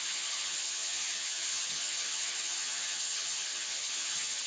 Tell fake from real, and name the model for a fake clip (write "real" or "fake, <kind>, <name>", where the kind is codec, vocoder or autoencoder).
fake, vocoder, HiFi-GAN